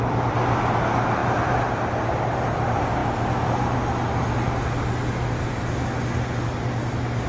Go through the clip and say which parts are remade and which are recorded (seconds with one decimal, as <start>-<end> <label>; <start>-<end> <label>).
0.0-7.3 recorded